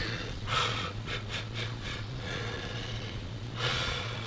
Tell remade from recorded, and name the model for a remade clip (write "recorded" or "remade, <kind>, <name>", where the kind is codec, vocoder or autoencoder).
remade, vocoder, Vocos